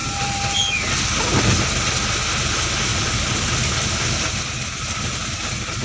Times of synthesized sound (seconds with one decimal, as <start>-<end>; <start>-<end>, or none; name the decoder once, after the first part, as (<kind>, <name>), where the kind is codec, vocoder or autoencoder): 0.0-2.0 (vocoder, BigVGAN v2); 2.9-3.4